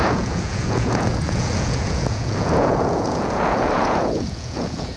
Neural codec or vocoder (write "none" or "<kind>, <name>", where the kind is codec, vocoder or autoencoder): vocoder, Vocos